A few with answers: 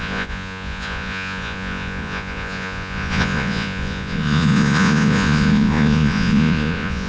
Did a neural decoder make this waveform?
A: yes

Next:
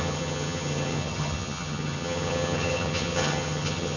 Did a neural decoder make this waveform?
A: yes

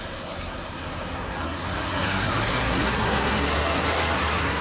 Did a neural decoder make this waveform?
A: yes